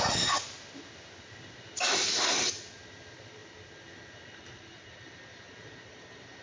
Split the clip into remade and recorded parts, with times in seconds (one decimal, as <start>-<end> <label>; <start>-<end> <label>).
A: 0.0-6.4 recorded